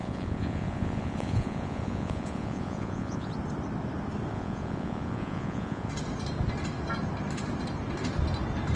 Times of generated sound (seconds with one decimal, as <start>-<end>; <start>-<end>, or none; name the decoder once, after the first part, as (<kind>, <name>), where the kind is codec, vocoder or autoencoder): 0.0-3.3 (vocoder, Vocos); 4.3-5.9